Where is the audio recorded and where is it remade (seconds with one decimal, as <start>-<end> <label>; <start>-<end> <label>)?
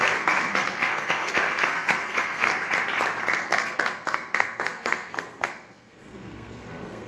0.0-2.5 remade; 2.5-3.4 recorded; 3.4-7.1 remade